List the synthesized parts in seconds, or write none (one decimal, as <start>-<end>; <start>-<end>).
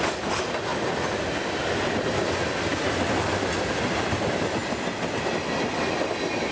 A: none